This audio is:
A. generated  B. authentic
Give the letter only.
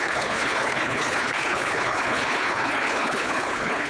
A